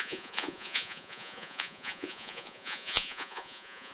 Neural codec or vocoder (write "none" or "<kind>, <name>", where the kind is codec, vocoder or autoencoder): vocoder, Vocos